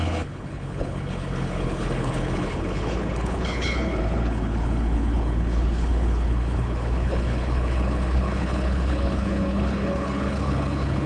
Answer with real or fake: fake